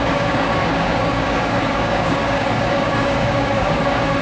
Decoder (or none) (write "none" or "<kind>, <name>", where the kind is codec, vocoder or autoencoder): codec, DAC